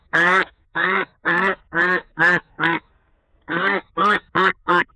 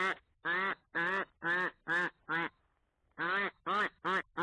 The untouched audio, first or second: second